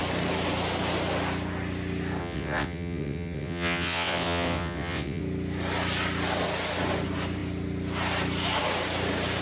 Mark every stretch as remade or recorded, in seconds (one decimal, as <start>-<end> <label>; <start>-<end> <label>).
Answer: 0.0-2.2 recorded; 2.2-5.2 remade; 5.2-9.4 recorded

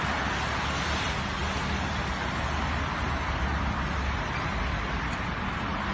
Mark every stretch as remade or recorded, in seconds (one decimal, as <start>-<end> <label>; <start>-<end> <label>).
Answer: 0.0-5.9 recorded